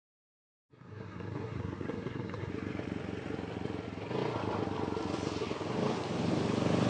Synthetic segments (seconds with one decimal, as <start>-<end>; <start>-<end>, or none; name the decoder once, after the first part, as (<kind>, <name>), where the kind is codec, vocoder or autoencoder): 0.6-2.5 (codec, SNAC)